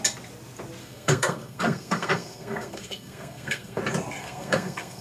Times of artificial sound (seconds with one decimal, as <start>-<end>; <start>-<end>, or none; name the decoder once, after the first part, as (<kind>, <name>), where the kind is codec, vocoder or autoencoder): 0.8-3.8 (codec, SNAC); 4.2-5.0